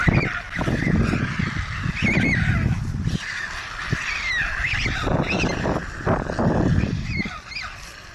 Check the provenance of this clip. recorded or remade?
recorded